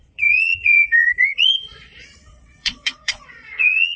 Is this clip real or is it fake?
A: fake